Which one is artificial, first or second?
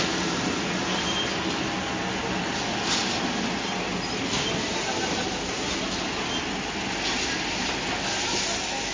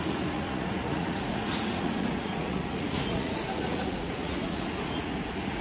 second